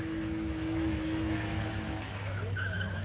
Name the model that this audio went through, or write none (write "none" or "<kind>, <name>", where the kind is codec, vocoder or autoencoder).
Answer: autoencoder, DAC-VAE